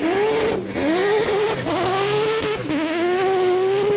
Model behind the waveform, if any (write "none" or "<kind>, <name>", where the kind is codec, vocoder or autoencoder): none